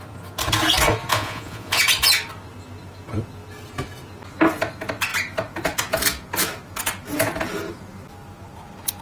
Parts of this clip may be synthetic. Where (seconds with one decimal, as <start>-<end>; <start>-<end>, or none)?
1.1-1.8